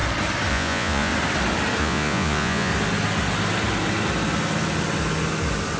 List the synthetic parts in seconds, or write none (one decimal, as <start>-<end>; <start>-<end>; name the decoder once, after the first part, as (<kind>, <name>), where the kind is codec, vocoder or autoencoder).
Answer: 0.5-1.1 (vocoder, Vocos); 1.8-2.7

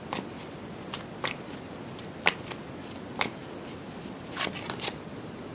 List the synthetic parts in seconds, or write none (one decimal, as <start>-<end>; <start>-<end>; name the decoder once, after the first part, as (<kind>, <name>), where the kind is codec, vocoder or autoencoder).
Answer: none

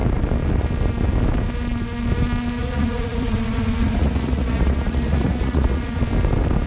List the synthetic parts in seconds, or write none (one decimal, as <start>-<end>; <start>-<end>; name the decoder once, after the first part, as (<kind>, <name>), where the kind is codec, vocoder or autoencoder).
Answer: 2.6-6.0 (vocoder, Vocos)

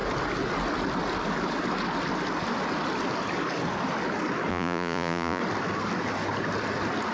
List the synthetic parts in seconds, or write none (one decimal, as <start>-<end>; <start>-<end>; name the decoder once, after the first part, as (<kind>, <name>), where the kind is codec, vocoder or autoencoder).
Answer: 4.5-5.4 (vocoder, Vocos)

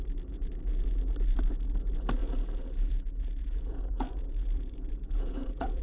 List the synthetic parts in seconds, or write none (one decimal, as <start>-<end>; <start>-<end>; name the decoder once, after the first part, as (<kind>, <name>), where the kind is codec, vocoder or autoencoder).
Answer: 2.2-5.8 (vocoder, Vocos)